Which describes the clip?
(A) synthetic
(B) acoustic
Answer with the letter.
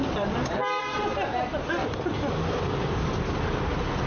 B